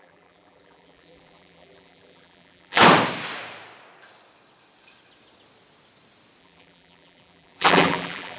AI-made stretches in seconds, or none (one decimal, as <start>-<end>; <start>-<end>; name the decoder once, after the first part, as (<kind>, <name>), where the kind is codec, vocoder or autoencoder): 0.0-2.8 (vocoder, BigVGAN v2); 6.4-8.4